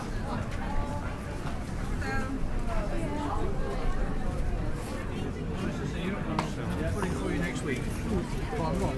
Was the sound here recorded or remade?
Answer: recorded